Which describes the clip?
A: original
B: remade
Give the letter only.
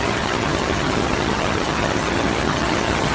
B